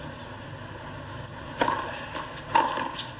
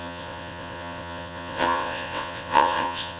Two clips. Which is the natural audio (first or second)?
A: first